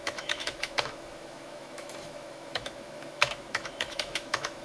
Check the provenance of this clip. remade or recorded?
remade